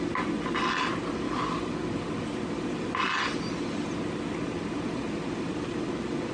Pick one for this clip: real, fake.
real